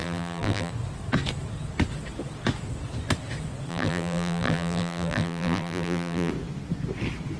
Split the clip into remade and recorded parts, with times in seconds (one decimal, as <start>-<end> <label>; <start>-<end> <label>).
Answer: 0.0-0.7 remade; 0.7-3.7 recorded; 3.7-6.3 remade; 6.3-7.4 recorded